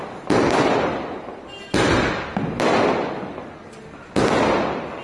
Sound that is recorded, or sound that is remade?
recorded